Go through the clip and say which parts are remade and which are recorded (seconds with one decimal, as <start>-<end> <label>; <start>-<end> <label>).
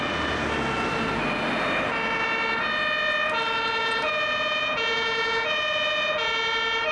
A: 0.0-3.8 recorded; 3.8-6.3 remade; 6.3-6.9 recorded